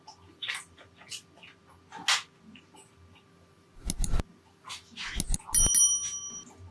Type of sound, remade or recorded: recorded